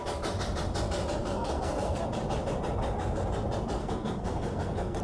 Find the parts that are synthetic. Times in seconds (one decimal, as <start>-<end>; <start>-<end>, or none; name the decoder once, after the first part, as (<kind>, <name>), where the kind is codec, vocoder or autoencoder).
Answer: 1.2-2.0 (codec, SNAC); 3.8-5.0

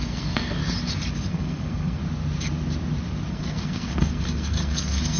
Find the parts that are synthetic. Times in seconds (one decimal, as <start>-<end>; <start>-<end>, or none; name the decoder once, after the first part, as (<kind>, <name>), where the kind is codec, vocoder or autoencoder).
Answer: 0.0-0.6 (codec, SNAC); 1.3-2.0; 3.3-5.2

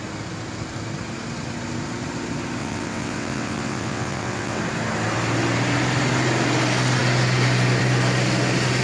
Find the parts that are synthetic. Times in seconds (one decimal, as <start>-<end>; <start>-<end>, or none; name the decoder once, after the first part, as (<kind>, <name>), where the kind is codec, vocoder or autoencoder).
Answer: 2.6-4.6 (vocoder, WaveNeXt)